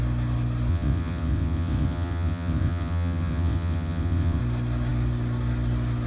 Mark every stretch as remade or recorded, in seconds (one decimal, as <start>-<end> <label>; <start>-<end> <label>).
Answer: 0.0-0.7 recorded; 0.7-4.4 remade; 4.4-6.1 recorded